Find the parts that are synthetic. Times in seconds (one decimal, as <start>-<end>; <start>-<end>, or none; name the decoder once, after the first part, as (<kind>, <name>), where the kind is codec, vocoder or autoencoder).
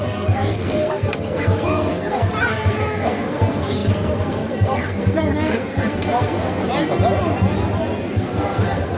0.0-6.6 (codec, SNAC); 8.1-9.0